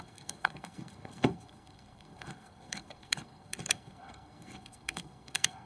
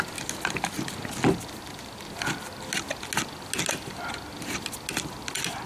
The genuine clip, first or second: second